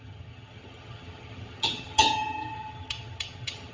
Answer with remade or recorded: remade